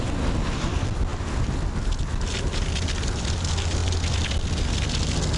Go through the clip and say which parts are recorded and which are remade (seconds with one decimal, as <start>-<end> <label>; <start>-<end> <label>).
0.0-5.4 recorded